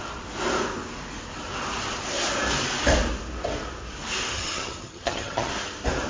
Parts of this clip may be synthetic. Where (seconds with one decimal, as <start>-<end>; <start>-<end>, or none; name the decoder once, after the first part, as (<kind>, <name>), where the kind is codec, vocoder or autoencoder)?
4.3-5.5 (vocoder, HiFi-GAN)